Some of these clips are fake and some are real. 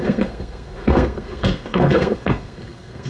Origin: fake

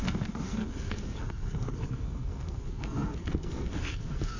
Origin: fake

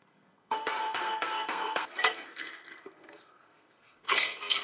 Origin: fake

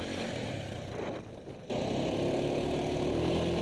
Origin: real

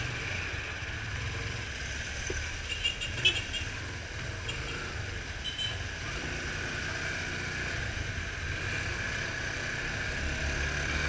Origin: real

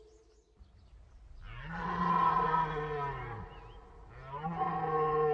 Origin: real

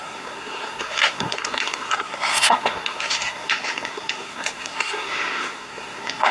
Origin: fake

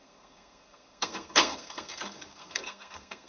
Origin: fake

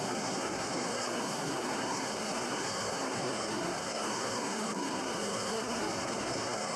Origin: fake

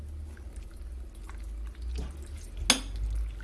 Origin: real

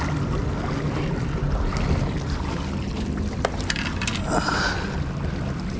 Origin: real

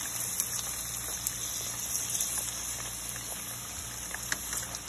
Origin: real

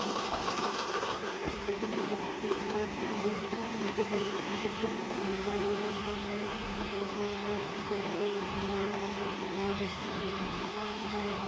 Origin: fake